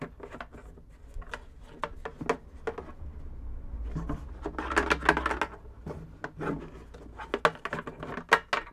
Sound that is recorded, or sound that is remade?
recorded